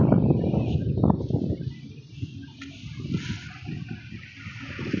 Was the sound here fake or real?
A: real